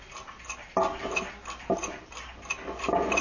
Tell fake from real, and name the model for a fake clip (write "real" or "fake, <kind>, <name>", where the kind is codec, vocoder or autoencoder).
real